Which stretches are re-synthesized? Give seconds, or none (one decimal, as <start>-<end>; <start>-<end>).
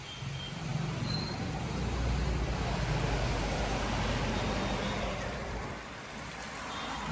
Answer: none